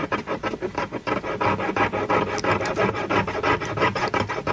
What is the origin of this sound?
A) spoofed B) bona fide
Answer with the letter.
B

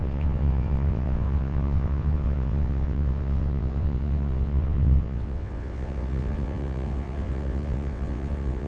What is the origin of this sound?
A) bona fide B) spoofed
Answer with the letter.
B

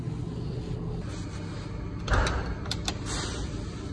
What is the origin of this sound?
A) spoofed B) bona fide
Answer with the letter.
B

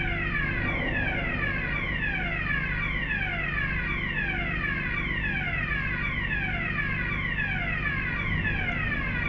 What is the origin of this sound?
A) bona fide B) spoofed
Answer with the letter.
A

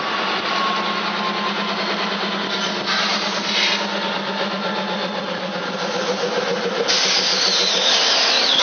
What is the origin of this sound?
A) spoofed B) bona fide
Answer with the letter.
B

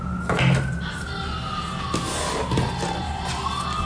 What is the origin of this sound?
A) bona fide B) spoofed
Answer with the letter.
A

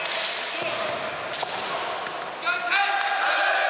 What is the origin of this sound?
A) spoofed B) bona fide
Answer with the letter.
B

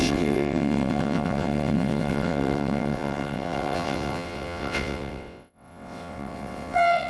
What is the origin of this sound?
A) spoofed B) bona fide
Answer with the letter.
A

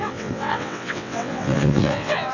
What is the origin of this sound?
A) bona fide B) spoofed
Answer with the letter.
B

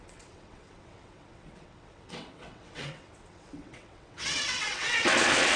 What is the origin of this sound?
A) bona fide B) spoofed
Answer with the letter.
B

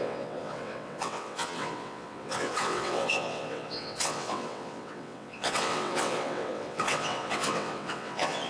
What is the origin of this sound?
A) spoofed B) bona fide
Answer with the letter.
A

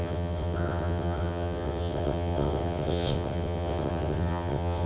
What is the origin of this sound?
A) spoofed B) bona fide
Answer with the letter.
A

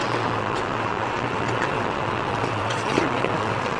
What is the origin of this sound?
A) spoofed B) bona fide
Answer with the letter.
A